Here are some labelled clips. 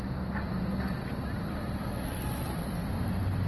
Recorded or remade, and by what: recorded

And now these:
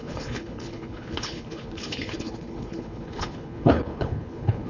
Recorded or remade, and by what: remade, codec, HILCodec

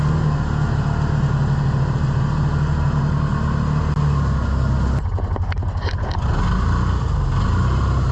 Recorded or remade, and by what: recorded